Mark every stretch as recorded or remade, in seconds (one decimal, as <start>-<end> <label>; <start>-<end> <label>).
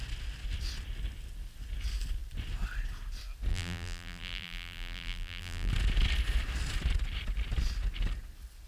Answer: 0.0-3.5 recorded; 3.5-5.7 remade; 5.7-8.7 recorded